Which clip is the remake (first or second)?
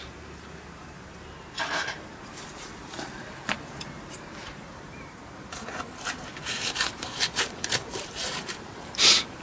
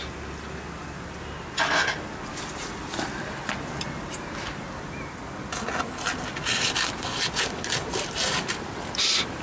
first